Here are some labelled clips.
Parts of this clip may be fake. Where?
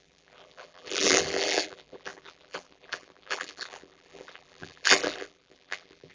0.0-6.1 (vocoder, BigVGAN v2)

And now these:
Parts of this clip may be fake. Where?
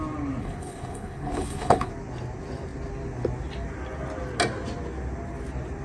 0.4-1.9 (codec, HILCodec)